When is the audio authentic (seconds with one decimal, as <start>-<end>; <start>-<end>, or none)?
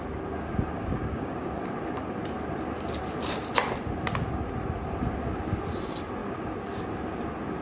0.0-0.8; 1.6-6.2; 6.9-7.6